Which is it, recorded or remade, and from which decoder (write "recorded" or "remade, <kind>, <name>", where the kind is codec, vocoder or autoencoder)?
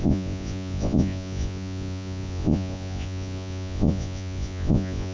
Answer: remade, vocoder, Vocos